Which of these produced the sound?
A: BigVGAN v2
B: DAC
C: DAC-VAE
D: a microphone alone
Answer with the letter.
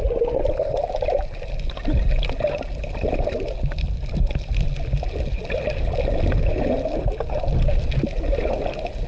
D